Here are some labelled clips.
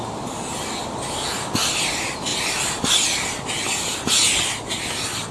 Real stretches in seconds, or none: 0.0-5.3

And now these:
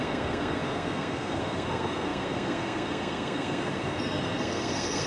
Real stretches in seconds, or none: none

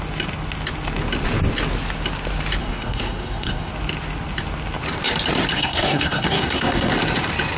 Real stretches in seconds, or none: 0.0-2.6; 3.7-5.5; 6.9-7.6

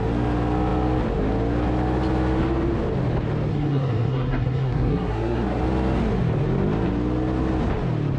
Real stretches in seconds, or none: 0.0-3.5; 5.6-8.2

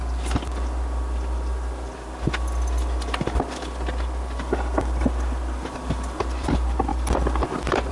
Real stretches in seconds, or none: 0.0-7.9